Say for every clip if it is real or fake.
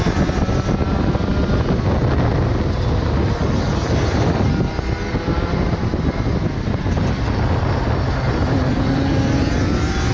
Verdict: real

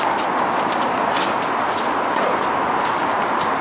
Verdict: real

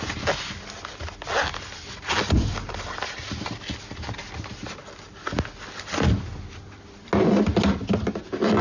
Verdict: real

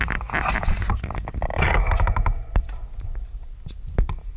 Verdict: real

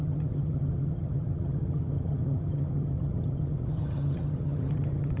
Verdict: fake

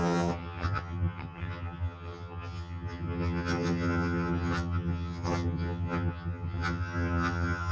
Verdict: fake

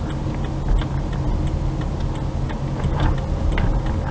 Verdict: real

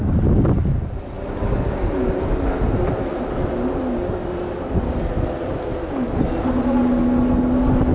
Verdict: real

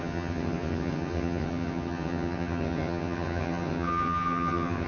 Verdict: fake